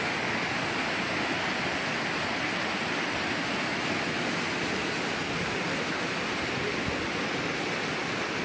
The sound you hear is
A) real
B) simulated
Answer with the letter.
A